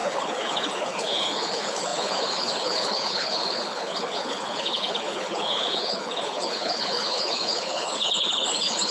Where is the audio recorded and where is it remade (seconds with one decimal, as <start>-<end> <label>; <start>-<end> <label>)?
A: 0.0-8.9 remade